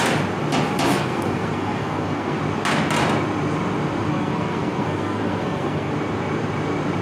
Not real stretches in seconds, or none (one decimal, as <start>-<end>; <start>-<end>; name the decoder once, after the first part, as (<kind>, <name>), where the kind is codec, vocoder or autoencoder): 0.9-2.4 (codec, SNAC); 4.1-5.9